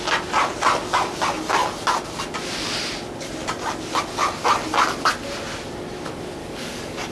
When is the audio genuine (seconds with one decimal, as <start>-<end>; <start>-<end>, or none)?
0.0-6.4